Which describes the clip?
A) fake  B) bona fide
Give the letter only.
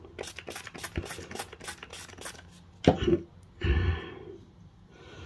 B